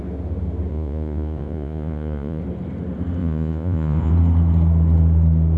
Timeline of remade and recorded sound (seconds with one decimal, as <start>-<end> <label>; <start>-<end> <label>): 0.0-0.7 recorded; 0.7-2.4 remade; 2.4-3.2 recorded; 3.2-4.1 remade; 4.1-5.6 recorded